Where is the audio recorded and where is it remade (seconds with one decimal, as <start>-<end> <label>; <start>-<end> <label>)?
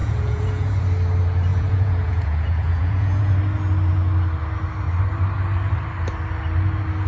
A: 0.0-0.8 remade; 0.8-1.5 recorded; 1.5-3.3 remade; 3.3-7.1 recorded